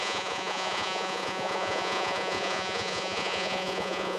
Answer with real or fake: fake